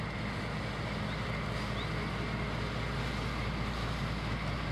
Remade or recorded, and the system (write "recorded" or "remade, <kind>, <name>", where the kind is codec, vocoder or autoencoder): recorded